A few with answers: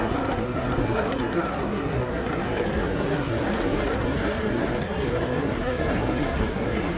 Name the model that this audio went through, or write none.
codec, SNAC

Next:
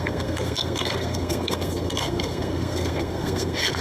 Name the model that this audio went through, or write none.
codec, SNAC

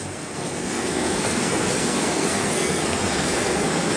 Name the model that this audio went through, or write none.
codec, SNAC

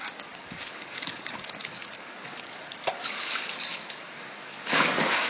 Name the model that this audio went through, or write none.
codec, DAC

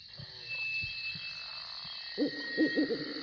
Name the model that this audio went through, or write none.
none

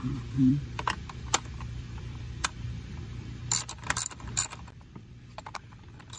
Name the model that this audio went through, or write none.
vocoder, BigVGAN v2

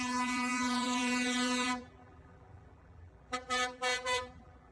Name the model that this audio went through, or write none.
vocoder, BigVGAN v2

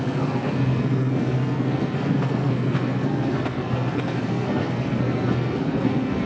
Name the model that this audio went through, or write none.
codec, SNAC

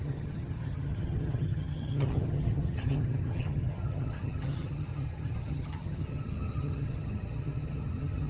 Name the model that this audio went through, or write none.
vocoder, HiFi-GAN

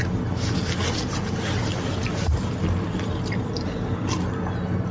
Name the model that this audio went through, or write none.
none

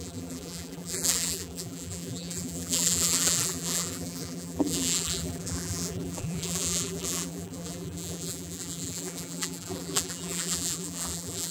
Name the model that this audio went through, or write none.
vocoder, BigVGAN v2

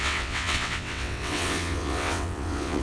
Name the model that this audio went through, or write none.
vocoder, WaveNeXt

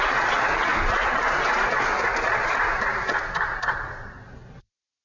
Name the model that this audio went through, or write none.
vocoder, BigVGAN v2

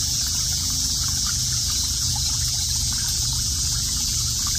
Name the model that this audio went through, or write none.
vocoder, Vocos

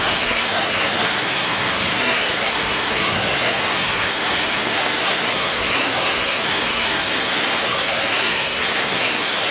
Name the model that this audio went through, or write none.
codec, SNAC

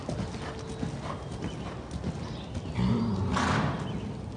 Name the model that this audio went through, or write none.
none